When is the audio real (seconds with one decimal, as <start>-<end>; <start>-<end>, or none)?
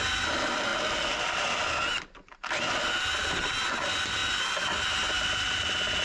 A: 0.0-6.0